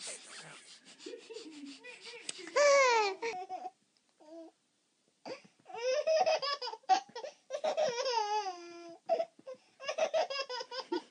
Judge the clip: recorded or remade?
recorded